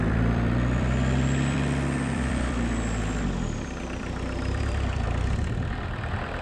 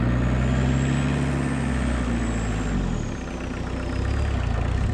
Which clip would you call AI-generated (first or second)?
first